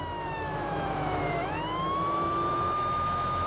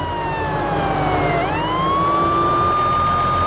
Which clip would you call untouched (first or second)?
second